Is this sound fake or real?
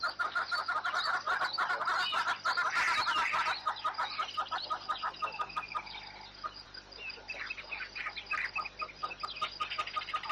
real